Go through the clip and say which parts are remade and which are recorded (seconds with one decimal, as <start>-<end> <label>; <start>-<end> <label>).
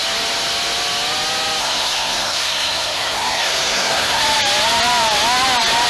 0.0-1.6 recorded; 1.6-4.2 remade; 4.2-5.9 recorded